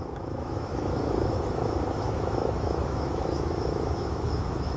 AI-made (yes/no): yes